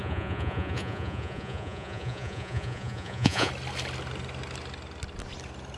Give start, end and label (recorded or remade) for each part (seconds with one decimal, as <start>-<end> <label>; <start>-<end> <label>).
0.0-3.5 remade; 3.5-5.8 recorded